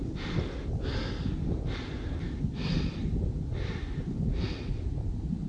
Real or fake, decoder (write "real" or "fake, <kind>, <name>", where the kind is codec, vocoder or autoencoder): real